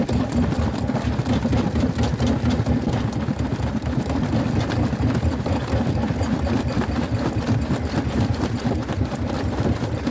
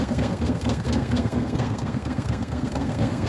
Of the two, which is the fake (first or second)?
second